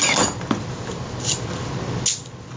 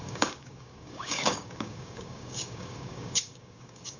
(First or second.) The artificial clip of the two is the second